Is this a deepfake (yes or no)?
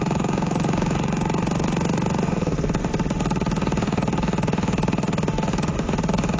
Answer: yes